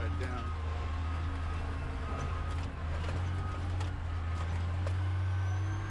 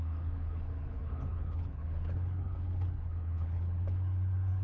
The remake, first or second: second